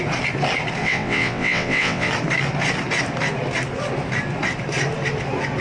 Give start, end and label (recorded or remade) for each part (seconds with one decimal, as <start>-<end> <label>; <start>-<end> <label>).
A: 0.0-0.8 recorded; 0.8-2.1 remade; 2.1-5.6 recorded